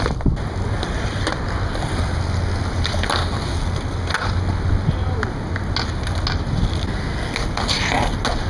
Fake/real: real